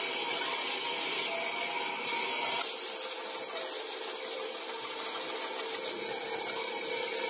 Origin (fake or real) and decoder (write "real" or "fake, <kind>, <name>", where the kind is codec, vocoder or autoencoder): real